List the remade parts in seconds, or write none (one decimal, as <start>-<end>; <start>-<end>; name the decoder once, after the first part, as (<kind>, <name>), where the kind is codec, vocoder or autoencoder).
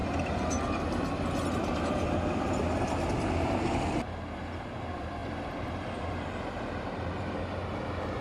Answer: 1.5-8.2 (vocoder, BigVGAN v2)